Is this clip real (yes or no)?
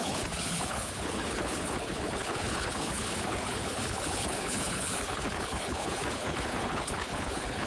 no